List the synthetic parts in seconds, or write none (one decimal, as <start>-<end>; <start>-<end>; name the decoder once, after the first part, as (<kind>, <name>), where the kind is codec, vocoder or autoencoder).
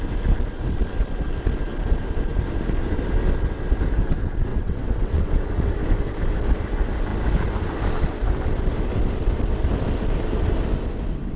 4.5-5.7 (vocoder, WaveNeXt)